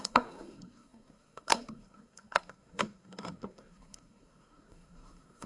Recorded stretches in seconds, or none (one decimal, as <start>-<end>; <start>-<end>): none